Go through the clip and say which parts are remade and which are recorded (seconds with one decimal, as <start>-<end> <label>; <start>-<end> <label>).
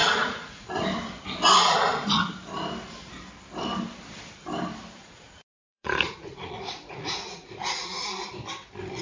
0.0-0.8 remade; 0.8-5.0 recorded; 5.0-8.0 remade; 8.0-9.0 recorded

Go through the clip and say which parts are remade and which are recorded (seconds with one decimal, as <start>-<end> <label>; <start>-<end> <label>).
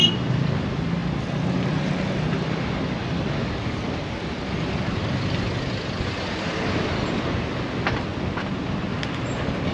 0.0-9.7 recorded